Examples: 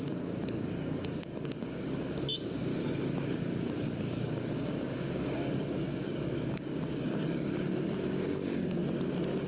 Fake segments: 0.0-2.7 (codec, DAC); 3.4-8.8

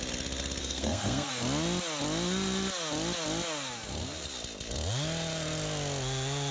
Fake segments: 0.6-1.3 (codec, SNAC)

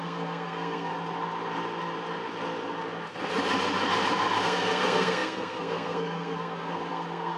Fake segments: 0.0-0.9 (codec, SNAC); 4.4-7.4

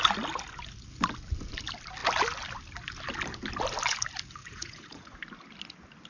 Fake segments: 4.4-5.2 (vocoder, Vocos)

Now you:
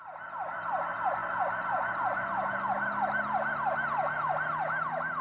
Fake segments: none

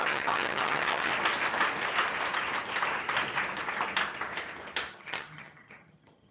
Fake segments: 0.0-1.1 (vocoder, HiFi-GAN); 4.9-6.3

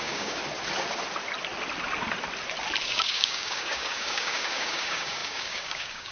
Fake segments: 0.0-0.4 (codec, DAC); 2.8-6.1

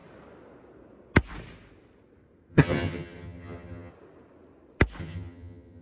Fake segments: 2.5-3.9 (vocoder, HiFi-GAN); 5.0-5.8